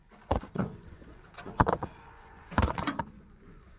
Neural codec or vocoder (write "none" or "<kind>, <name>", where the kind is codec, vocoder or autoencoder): vocoder, Vocos